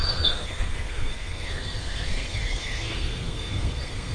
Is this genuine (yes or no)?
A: no